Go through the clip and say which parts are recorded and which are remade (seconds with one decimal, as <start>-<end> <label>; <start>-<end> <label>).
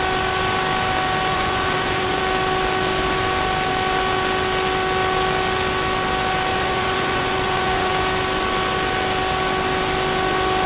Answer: 0.0-1.3 recorded; 1.3-2.2 remade; 2.2-6.5 recorded; 6.5-7.9 remade; 7.9-10.7 recorded